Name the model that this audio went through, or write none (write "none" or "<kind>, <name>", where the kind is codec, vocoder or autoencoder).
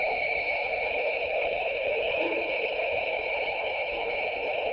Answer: codec, HILCodec